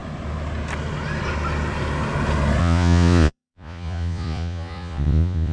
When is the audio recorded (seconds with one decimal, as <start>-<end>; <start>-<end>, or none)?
0.0-2.6